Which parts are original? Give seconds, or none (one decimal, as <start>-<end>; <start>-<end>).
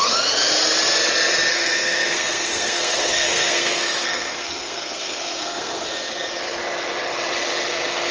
0.0-1.5; 5.9-8.1